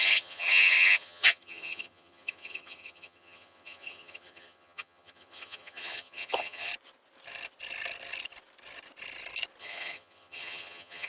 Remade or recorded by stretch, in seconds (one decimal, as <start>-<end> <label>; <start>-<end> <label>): 0.0-6.7 remade; 6.7-9.6 recorded; 9.6-11.1 remade